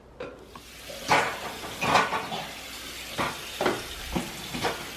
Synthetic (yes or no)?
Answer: no